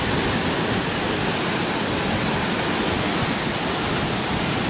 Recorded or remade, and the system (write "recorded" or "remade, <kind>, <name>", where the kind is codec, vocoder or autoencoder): recorded